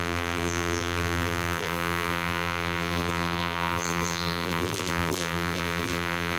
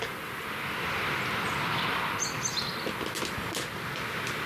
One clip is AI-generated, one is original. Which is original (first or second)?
second